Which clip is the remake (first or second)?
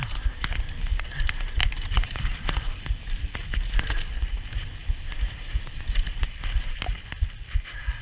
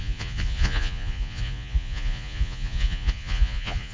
second